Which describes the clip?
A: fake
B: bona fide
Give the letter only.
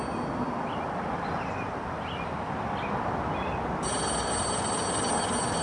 B